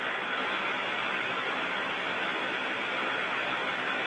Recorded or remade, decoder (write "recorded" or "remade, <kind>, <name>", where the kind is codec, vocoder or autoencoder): recorded